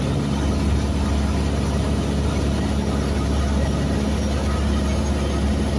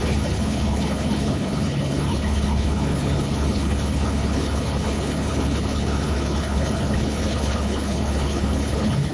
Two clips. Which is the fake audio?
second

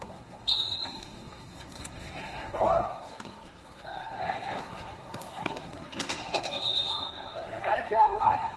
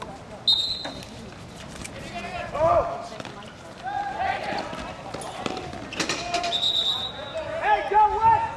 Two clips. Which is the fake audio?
first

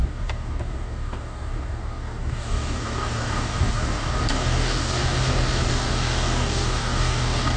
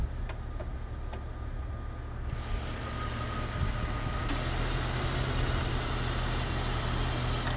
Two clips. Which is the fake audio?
first